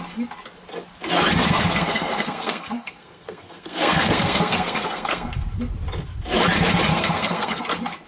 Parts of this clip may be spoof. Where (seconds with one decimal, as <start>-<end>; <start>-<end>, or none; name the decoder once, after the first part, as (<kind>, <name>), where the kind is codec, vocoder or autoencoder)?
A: 1.4-5.4 (codec, SNAC); 6.9-7.6